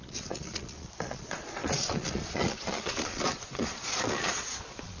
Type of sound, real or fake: fake